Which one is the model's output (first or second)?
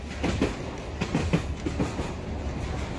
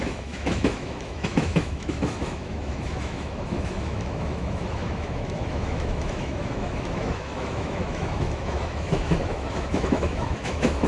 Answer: second